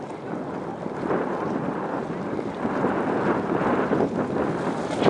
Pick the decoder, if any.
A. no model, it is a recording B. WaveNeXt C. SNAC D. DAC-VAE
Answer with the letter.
A